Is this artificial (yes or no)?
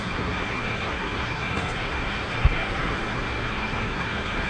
yes